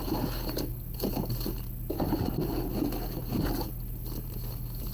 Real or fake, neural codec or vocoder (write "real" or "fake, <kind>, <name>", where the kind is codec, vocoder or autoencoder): real